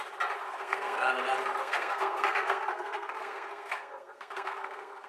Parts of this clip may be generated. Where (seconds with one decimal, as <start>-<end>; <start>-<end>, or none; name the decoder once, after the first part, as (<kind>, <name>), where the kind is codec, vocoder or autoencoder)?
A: 0.4-1.1 (codec, SNAC); 1.6-5.1